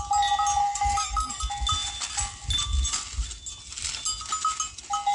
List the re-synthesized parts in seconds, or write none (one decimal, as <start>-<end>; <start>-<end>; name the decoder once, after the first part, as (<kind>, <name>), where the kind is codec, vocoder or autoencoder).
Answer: 0.6-1.4 (codec, SNAC)